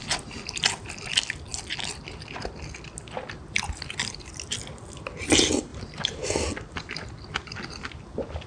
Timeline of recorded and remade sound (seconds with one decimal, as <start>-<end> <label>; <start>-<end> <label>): 0.0-5.7 recorded; 5.7-6.3 remade; 6.3-8.5 recorded